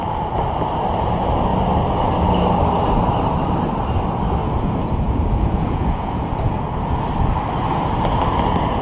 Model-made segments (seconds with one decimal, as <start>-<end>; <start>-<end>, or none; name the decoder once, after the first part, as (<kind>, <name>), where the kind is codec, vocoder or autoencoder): 4.4-6.6 (vocoder, Vocos)